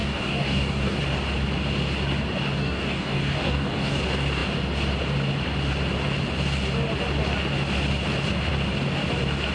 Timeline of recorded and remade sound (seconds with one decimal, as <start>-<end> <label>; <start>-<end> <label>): 0.0-1.0 remade; 1.0-2.6 recorded; 2.6-4.0 remade; 4.0-9.5 recorded